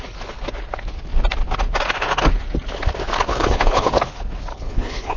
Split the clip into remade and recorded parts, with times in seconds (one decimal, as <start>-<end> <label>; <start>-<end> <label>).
0.0-3.3 recorded; 3.3-3.9 remade; 3.9-4.5 recorded; 4.5-5.2 remade